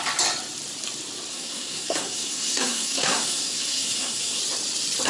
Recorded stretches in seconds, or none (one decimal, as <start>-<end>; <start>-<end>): 0.0-1.3; 4.4-5.1